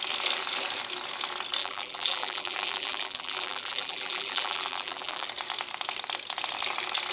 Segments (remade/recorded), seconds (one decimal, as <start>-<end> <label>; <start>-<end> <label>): 0.0-1.6 recorded; 1.6-5.3 remade; 5.3-7.1 recorded